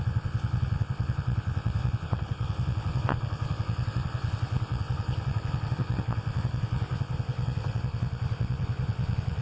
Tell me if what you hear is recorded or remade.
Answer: remade